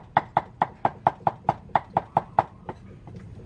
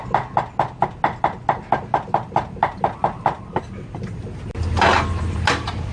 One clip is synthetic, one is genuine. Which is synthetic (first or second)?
first